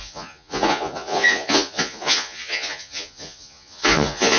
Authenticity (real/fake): fake